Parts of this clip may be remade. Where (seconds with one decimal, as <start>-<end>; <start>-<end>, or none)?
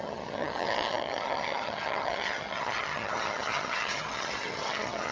0.0-5.1